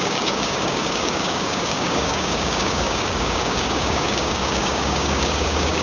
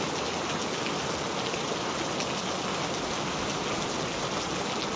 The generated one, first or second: first